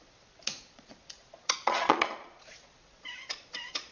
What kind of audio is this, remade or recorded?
remade